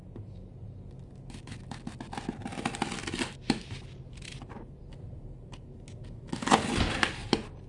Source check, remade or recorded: recorded